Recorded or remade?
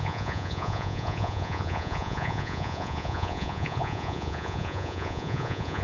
remade